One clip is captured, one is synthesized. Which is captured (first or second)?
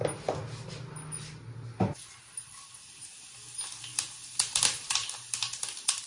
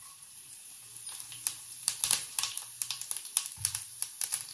first